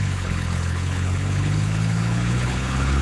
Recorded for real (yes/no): no